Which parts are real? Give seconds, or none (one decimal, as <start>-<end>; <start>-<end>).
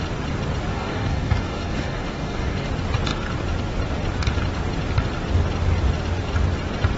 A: 0.0-0.7; 2.7-7.0